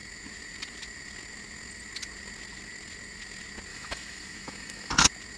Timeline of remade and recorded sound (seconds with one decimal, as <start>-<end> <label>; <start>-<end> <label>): 0.0-3.7 recorded; 3.7-4.9 remade; 4.9-5.4 recorded